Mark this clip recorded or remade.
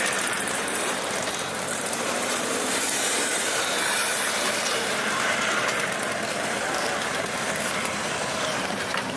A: remade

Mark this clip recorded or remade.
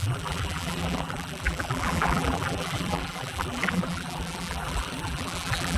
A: remade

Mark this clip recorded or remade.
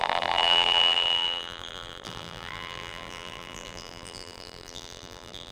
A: remade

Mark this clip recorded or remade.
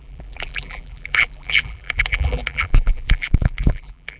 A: remade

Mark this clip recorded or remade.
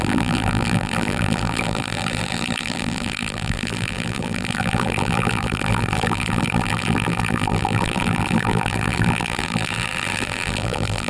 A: remade